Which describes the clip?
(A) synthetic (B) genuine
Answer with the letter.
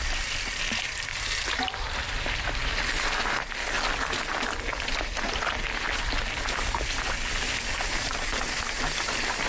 B